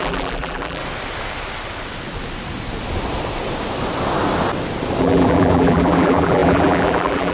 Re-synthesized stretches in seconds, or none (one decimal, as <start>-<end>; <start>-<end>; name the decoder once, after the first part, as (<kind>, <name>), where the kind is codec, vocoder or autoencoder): 0.0-0.8 (vocoder, BigVGAN v2); 5.0-7.3